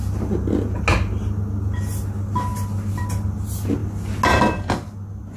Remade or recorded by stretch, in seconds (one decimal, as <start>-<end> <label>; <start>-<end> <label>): 0.0-5.4 recorded